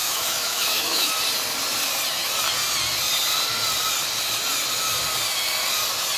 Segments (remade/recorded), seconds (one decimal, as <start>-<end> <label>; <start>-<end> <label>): 0.0-1.1 remade; 1.1-6.2 recorded

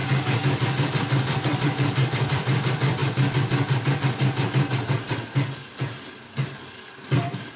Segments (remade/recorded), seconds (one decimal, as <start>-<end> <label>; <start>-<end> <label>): 0.0-0.8 recorded; 0.8-3.0 remade; 3.0-6.6 recorded; 6.6-7.6 remade

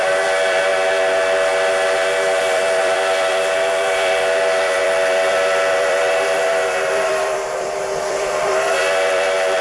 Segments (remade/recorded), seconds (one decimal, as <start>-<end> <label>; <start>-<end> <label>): 0.0-0.7 remade; 0.7-2.4 recorded; 2.4-9.6 remade

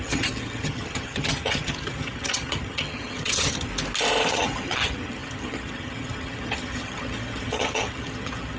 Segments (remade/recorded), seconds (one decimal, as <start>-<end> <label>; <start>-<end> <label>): 0.0-3.7 remade; 3.7-4.3 recorded; 4.3-8.6 remade